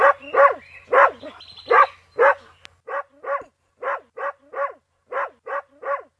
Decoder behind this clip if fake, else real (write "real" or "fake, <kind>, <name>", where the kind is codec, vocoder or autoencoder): real